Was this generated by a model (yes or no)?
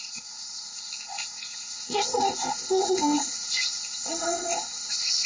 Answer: yes